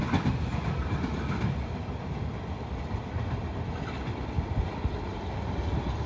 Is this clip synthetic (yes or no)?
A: no